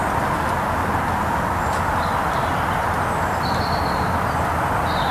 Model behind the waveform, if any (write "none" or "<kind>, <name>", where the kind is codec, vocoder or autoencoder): none